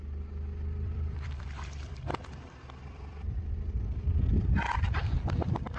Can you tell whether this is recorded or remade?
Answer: remade